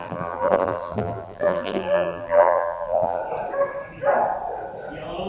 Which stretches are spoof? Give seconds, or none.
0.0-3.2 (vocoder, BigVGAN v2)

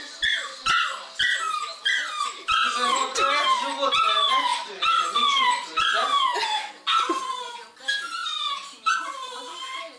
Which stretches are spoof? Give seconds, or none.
none

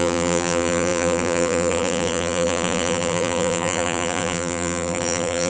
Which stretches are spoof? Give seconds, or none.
0.0-5.5 (vocoder, BigVGAN v2)

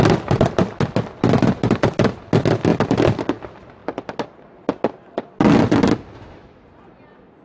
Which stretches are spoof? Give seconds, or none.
none

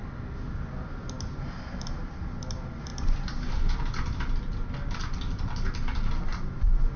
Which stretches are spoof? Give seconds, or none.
none